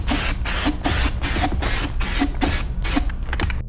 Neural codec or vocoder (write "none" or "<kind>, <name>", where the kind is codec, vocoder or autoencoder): none